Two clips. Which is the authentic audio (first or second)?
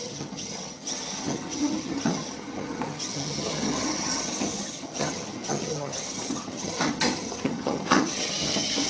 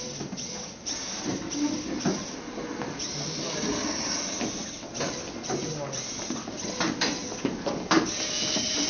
second